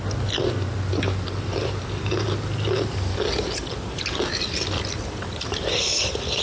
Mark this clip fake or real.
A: real